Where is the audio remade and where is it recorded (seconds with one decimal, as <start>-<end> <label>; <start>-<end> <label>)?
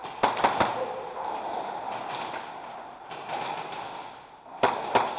0.0-5.2 recorded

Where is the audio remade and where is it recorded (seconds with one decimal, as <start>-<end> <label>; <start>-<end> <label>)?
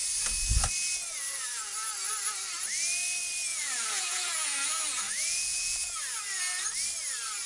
0.0-3.5 recorded; 3.5-6.2 remade; 6.2-7.5 recorded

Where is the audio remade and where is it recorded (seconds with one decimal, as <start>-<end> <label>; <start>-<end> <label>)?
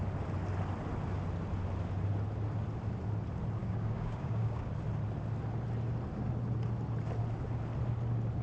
0.0-3.6 recorded; 3.6-4.7 remade; 4.7-8.4 recorded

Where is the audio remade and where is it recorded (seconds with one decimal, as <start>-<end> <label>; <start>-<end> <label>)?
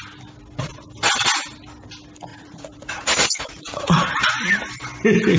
0.0-2.3 recorded; 2.3-4.1 remade; 4.1-5.4 recorded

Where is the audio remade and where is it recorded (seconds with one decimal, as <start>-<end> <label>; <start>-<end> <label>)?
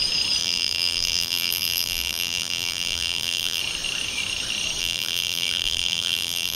0.0-0.4 recorded; 0.4-3.6 remade; 3.6-4.8 recorded; 4.8-6.6 remade